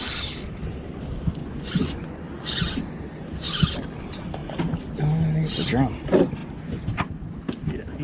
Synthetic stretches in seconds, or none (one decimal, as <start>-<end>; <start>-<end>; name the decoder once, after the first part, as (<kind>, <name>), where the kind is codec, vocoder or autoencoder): 1.4-2.6 (vocoder, Vocos)